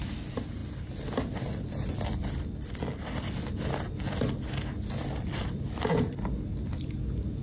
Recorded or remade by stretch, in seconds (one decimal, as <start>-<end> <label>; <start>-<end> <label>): 0.0-7.4 recorded